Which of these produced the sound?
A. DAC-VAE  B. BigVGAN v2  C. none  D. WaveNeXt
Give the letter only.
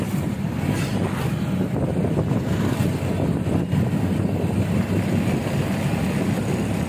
C